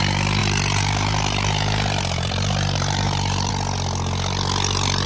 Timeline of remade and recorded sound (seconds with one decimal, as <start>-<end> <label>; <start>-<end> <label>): 0.0-0.4 recorded; 0.4-3.5 remade; 3.5-5.1 recorded